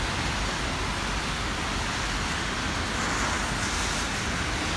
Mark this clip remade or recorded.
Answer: recorded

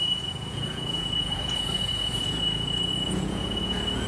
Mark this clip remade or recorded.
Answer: remade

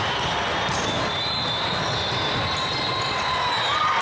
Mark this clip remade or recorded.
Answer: recorded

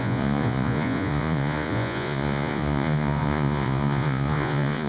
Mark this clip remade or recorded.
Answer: remade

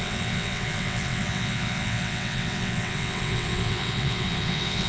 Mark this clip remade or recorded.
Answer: remade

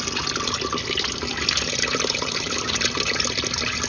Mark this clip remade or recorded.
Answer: remade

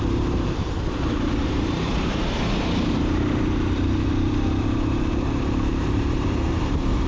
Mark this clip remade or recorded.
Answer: remade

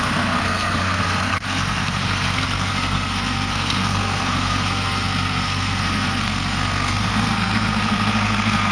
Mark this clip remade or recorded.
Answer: remade